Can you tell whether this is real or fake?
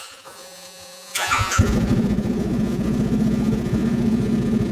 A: fake